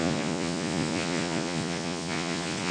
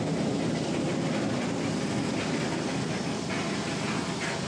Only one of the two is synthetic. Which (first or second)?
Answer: first